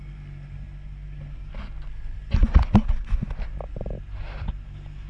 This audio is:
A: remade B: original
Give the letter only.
B